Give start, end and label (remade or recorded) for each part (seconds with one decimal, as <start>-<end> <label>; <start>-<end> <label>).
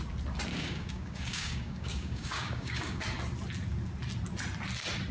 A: 0.0-0.5 recorded; 0.5-3.0 remade; 3.0-5.1 recorded